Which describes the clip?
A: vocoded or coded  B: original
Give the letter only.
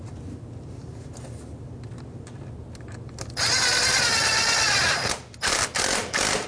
B